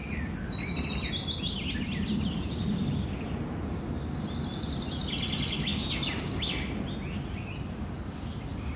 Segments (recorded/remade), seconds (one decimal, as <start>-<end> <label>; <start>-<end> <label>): 0.0-8.8 recorded